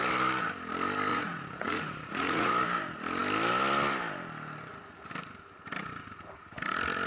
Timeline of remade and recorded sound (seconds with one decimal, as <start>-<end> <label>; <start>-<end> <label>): 0.0-1.1 recorded; 1.1-2.5 remade; 2.5-7.1 recorded